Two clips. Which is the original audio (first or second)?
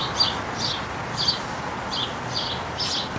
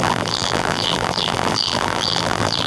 first